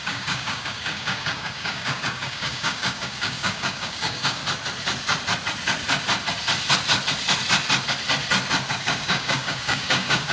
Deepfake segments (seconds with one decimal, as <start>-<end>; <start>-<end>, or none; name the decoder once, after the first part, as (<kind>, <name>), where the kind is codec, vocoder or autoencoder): 0.0-4.4 (codec, DAC); 8.8-10.3